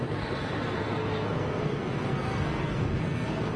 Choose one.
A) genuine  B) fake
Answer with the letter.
B